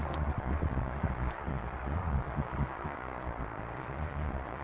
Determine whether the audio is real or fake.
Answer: fake